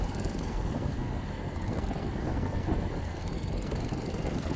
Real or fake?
fake